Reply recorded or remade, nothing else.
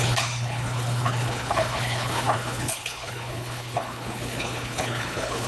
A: remade